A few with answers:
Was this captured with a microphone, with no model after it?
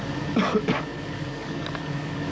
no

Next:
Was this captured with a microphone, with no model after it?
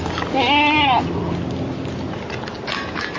yes